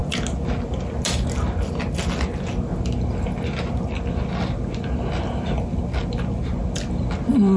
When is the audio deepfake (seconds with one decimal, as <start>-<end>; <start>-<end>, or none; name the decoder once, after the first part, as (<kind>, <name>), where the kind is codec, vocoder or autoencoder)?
none